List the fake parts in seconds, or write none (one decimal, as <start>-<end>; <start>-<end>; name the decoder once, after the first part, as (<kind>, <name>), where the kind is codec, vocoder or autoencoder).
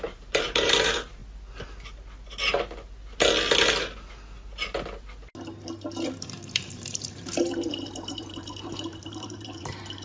0.0-1.2 (vocoder, BigVGAN v2); 6.2-10.0